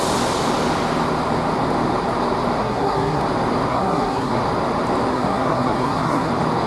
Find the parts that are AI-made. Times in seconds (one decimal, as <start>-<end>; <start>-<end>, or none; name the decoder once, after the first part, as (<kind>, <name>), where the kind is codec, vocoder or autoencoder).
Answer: 2.6-3.2 (codec, SNAC); 3.7-4.4; 5.1-6.3